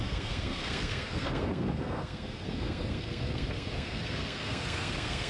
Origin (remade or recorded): remade